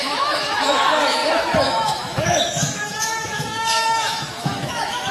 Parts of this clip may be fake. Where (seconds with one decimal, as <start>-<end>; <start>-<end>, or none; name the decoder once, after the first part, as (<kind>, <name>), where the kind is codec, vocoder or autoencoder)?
0.0-5.1 (autoencoder, DAC-VAE)